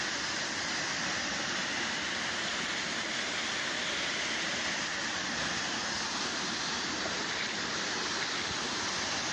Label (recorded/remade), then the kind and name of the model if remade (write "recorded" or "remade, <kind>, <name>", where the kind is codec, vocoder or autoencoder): recorded